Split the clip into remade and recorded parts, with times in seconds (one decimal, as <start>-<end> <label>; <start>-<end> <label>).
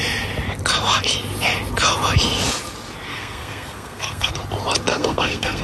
0.0-3.1 recorded; 3.1-4.3 remade; 4.3-4.9 recorded; 4.9-5.6 remade